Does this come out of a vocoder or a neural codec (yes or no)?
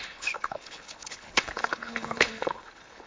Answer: yes